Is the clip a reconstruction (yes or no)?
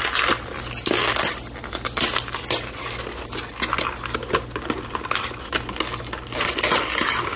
no